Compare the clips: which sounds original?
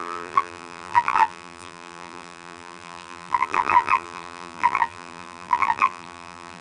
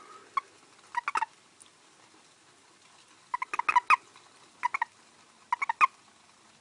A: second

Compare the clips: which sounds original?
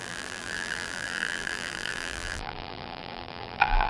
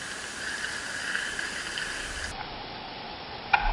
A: second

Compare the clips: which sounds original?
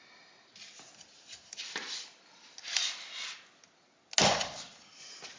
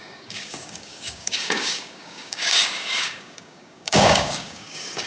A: first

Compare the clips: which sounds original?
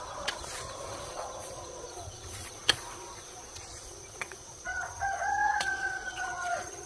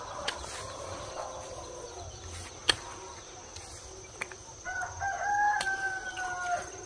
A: second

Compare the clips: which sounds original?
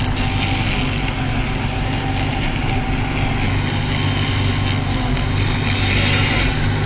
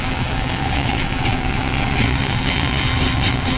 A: first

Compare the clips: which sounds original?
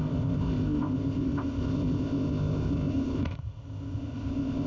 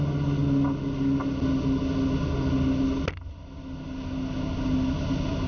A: second